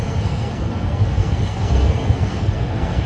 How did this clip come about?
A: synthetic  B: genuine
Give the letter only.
A